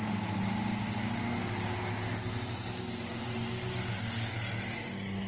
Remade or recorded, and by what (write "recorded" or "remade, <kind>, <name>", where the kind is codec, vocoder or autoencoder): recorded